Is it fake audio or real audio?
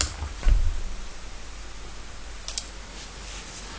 real